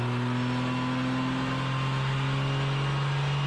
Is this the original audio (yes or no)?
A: yes